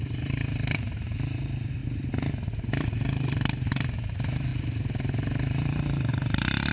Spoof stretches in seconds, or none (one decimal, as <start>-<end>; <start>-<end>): 0.0-1.8; 2.9-6.7